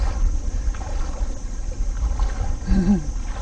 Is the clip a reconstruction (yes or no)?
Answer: no